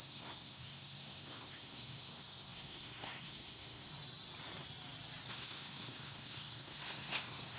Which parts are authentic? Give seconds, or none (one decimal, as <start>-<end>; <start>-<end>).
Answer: 3.9-5.3